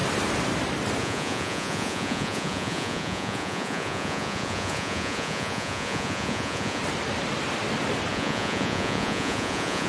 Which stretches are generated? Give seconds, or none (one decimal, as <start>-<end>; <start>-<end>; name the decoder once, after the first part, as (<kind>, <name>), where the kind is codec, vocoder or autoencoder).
1.0-6.8 (vocoder, Vocos); 8.1-9.9